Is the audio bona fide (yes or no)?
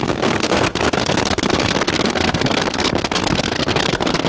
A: no